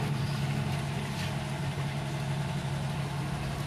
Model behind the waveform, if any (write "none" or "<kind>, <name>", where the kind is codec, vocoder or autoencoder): none